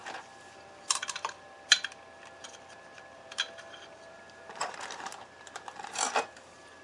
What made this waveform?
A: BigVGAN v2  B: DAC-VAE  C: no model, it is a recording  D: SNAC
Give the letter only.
A